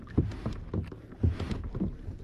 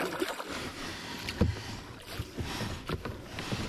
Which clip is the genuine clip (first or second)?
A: second